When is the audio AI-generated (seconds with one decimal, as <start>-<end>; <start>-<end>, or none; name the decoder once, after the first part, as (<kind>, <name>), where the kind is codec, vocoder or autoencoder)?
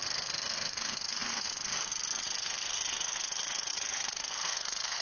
0.0-5.0 (codec, SNAC)